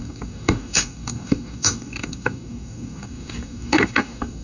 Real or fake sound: fake